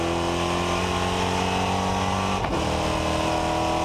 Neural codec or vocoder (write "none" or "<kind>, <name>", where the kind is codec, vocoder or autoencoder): none